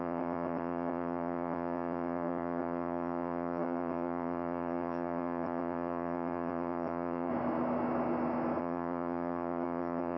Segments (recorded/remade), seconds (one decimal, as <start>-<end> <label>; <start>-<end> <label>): 0.0-7.3 remade; 7.3-8.6 recorded; 8.6-10.2 remade